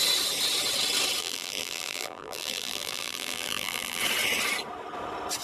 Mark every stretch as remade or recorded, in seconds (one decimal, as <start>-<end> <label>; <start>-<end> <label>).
0.0-1.2 recorded; 1.2-4.0 remade; 4.0-5.4 recorded